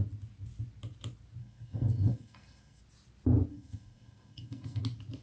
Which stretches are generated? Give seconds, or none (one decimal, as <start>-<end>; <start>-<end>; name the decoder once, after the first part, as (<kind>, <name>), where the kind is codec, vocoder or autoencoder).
1.4-2.8 (codec, SNAC); 3.5-4.8

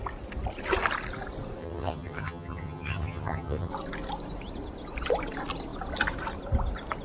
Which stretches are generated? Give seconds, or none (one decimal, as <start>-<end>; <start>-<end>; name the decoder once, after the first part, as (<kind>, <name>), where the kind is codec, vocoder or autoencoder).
1.6-3.7 (vocoder, HiFi-GAN)

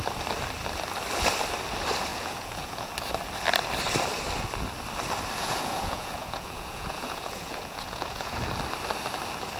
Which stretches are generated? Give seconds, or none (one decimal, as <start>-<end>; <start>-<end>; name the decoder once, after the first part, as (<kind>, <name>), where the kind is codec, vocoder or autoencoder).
2.1-2.9 (vocoder, Vocos); 5.4-8.4

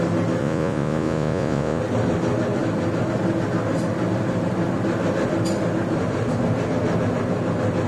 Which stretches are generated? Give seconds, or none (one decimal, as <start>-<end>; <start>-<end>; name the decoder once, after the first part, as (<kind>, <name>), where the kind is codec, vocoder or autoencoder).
0.4-1.8 (vocoder, Vocos)

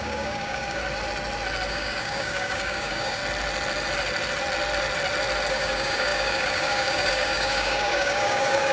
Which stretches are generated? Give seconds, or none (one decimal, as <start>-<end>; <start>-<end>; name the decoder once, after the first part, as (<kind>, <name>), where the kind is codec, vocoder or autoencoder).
0.0-0.8 (codec, DAC); 1.7-3.2; 5.5-8.7

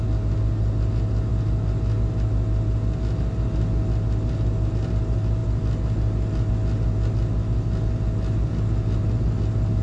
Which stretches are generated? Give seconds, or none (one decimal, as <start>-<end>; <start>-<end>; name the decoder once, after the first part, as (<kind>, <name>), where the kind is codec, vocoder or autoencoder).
none

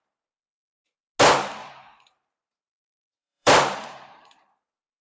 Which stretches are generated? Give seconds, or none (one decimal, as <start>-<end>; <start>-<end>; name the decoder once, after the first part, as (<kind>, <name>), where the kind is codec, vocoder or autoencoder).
1.6-4.6 (vocoder, BigVGAN v2)